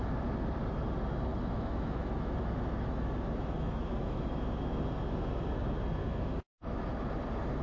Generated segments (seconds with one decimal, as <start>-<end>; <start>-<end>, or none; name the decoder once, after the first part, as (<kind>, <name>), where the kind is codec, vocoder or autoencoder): 1.3-4.8 (autoencoder, DAC-VAE); 6.0-6.8